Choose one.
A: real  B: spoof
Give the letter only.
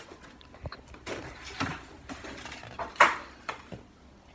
A